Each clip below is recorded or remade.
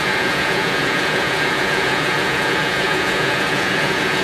remade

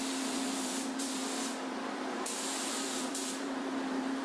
remade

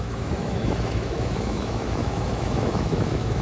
remade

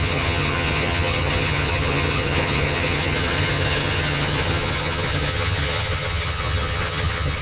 remade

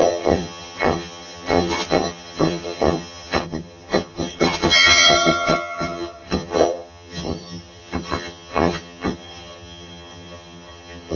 remade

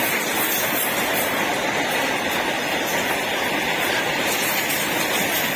remade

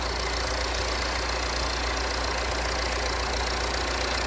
recorded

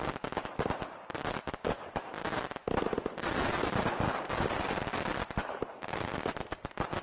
recorded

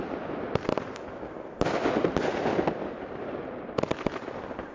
recorded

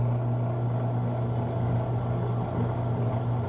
recorded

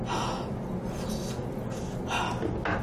recorded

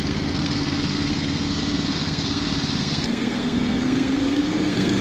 remade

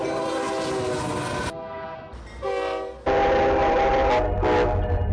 recorded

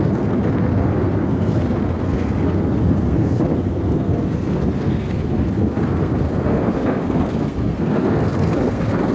remade